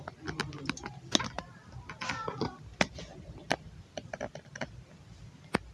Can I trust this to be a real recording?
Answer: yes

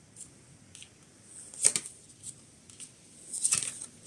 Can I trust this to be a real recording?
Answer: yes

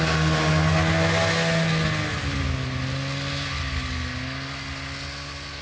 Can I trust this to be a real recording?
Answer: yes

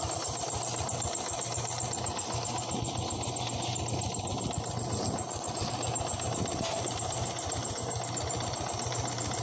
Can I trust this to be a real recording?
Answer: yes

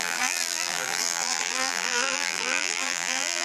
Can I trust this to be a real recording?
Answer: no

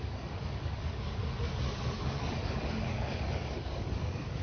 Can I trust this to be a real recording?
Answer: no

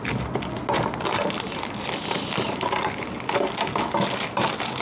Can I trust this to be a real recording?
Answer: yes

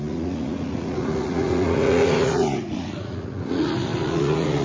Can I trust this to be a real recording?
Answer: no